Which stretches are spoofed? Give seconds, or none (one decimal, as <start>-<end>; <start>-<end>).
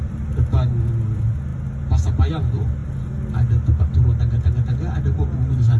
none